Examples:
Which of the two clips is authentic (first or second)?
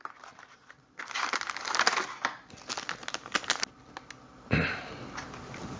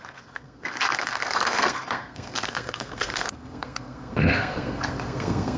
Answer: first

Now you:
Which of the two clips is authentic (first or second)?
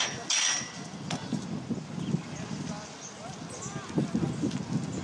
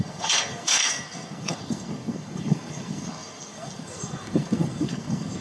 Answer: first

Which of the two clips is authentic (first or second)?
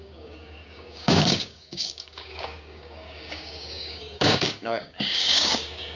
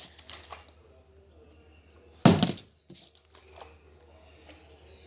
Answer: second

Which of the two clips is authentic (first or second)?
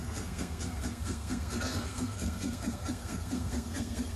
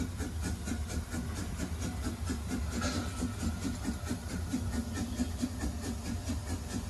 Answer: second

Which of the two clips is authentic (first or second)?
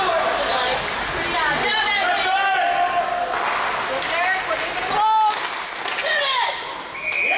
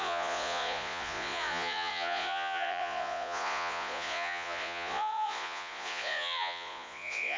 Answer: first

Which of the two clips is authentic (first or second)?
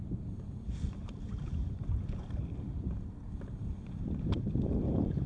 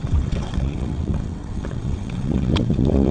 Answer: first